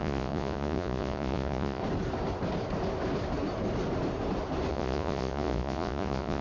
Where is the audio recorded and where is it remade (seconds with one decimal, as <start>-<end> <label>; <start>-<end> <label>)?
0.0-1.8 remade; 1.8-4.7 recorded; 4.7-6.4 remade

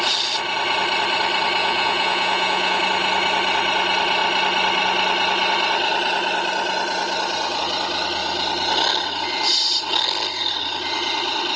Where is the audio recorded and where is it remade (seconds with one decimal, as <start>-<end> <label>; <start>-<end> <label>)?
0.0-1.6 recorded; 1.6-2.8 remade; 2.8-11.6 recorded

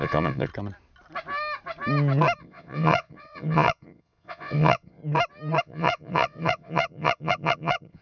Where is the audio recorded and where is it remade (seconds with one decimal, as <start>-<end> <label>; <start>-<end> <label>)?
0.0-0.5 remade; 0.5-2.4 recorded; 2.4-5.0 remade; 5.0-5.6 recorded; 5.6-8.0 remade

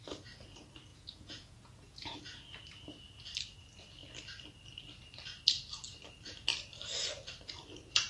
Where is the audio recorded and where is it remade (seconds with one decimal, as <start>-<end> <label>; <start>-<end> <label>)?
0.0-0.9 recorded; 0.9-2.2 remade; 2.2-8.1 recorded

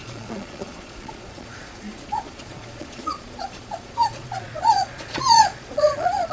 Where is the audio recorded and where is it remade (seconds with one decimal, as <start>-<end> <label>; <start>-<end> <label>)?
0.0-6.3 remade